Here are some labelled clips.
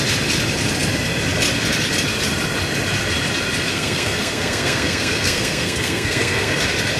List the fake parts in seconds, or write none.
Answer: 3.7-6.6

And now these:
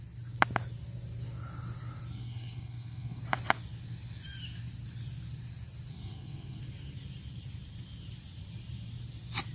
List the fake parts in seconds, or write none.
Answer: 2.1-3.2; 5.9-6.6

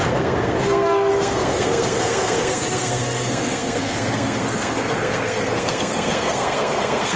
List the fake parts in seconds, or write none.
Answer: 0.0-7.2

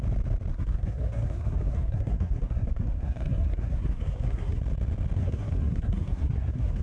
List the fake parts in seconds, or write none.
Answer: 0.5-4.6; 5.2-6.8

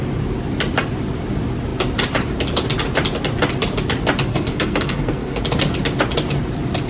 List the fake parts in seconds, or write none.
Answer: 4.3-5.4